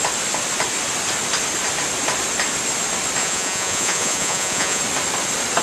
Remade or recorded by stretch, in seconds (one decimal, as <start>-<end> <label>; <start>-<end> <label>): 0.0-3.2 recorded; 3.2-4.8 remade; 4.8-5.6 recorded